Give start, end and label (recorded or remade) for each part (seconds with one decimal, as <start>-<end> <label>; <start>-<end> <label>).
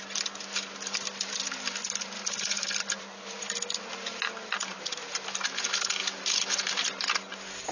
0.0-7.7 recorded